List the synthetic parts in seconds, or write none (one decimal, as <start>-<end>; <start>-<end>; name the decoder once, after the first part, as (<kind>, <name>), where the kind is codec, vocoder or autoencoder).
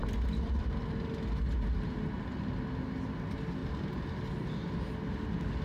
none